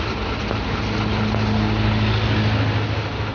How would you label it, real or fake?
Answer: real